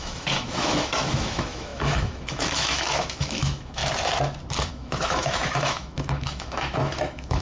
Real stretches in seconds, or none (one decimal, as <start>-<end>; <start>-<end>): 3.8-4.7